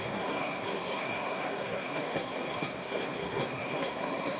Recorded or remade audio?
remade